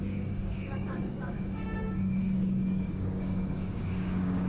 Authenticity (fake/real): fake